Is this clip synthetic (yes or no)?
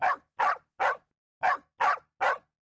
no